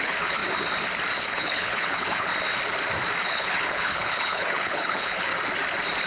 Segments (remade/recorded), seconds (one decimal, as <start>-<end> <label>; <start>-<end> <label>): 0.0-0.4 remade; 0.4-1.2 recorded; 1.2-2.3 remade; 2.3-3.2 recorded; 3.2-5.3 remade; 5.3-6.1 recorded